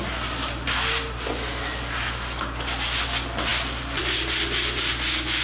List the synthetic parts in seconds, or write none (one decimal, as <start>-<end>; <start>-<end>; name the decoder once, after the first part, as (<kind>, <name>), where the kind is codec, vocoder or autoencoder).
none